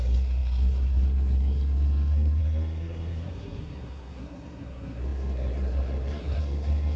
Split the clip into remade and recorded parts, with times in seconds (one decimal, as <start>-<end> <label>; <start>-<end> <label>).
0.0-7.0 remade